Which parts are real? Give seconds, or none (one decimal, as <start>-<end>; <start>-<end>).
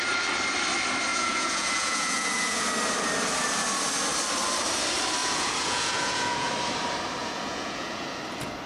0.0-1.1; 2.6-5.2; 6.5-7.2; 8.2-8.7